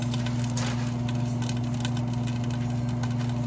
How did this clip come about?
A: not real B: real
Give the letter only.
B